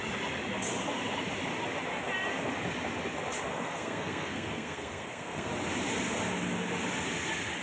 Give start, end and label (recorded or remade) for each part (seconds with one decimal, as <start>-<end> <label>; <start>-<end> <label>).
0.0-3.5 recorded; 3.5-5.5 remade; 5.5-7.6 recorded